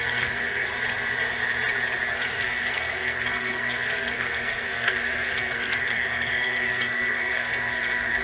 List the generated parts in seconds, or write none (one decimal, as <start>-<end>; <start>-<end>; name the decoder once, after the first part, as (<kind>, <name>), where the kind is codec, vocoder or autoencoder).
0.0-0.7 (codec, SNAC); 2.1-8.2